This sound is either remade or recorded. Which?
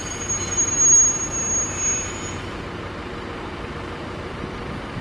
recorded